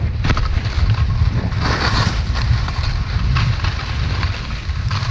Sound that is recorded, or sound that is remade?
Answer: recorded